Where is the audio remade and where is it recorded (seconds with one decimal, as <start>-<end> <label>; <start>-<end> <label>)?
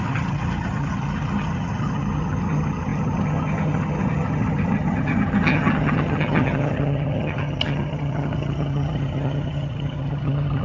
0.0-10.6 remade